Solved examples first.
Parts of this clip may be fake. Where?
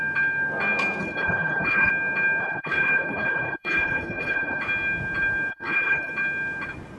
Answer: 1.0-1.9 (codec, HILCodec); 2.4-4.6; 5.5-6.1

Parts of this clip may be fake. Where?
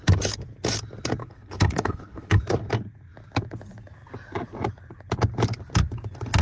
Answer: 1.2-2.4 (codec, HILCodec)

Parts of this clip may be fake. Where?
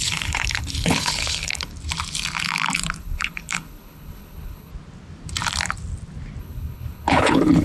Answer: 0.0-1.7 (codec, HILCodec); 3.0-4.7; 6.4-7.6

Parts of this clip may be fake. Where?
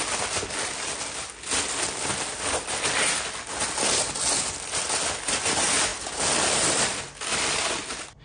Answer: none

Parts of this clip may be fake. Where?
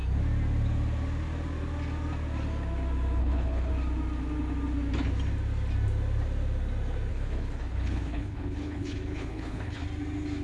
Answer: 3.2-3.7 (codec, HILCodec); 7.1-9.8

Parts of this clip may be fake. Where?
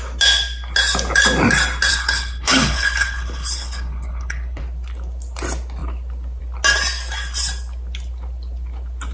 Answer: 1.9-4.6 (codec, HILCodec)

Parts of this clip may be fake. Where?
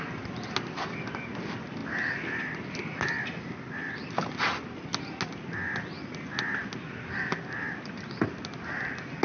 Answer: none